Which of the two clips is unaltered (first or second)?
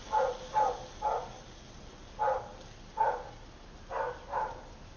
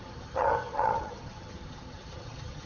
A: first